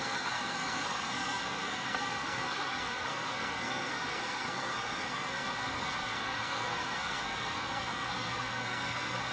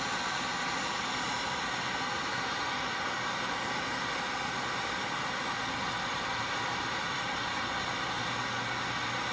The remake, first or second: first